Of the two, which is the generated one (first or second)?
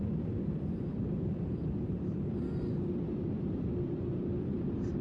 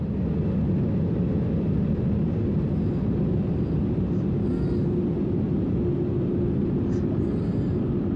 first